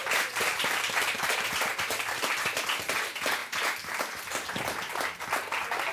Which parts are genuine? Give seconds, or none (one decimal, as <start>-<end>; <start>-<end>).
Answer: 1.7-3.4; 4.9-5.9